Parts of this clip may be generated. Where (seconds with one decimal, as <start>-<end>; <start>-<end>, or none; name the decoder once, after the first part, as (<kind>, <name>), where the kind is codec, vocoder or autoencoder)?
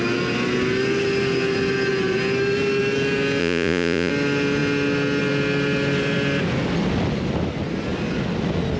3.4-4.1 (vocoder, Vocos)